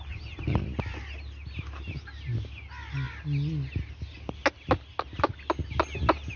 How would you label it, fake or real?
real